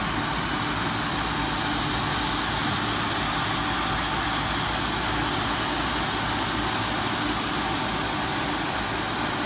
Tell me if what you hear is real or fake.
real